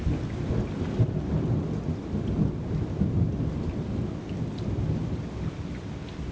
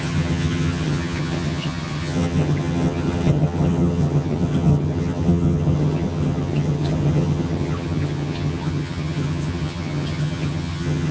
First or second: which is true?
first